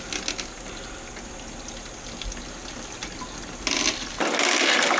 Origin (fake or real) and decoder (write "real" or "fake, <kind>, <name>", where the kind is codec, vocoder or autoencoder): real